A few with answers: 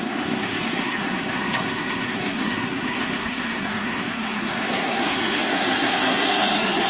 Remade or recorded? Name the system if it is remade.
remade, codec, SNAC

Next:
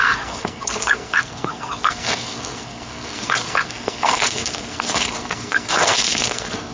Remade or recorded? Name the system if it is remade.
remade, codec, SNAC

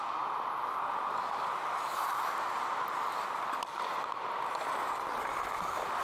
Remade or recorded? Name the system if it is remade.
recorded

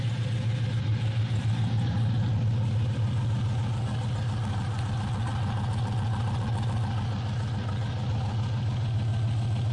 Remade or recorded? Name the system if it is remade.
recorded